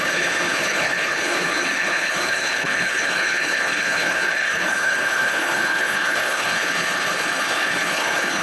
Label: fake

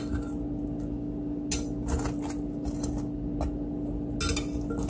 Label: real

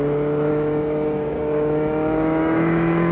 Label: fake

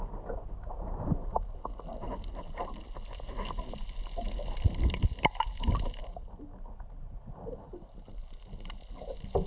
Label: real